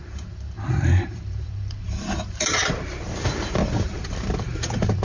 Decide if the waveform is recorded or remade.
remade